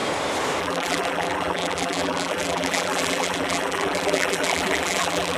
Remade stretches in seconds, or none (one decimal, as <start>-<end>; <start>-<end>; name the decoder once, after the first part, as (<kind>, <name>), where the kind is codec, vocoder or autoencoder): 0.6-5.4 (vocoder, BigVGAN v2)